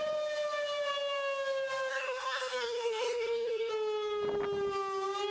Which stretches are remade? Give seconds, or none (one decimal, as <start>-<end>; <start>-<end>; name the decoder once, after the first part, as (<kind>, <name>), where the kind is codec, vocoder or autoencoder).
1.9-3.7 (codec, SNAC)